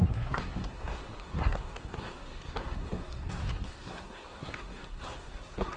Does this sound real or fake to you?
fake